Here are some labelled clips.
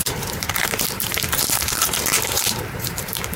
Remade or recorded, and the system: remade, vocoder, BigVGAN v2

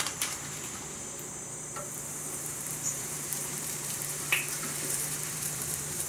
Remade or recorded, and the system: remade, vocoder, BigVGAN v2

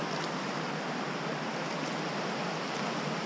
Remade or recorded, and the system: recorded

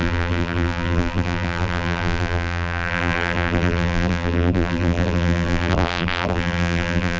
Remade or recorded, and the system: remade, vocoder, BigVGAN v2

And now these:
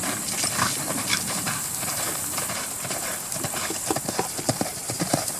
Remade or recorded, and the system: remade, vocoder, BigVGAN v2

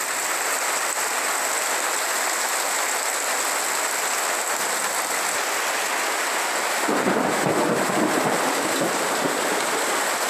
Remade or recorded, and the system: recorded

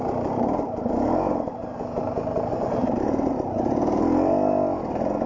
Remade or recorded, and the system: recorded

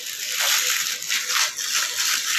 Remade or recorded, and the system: recorded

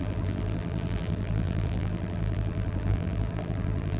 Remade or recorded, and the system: remade, vocoder, BigVGAN v2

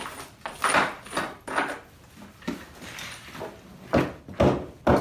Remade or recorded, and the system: recorded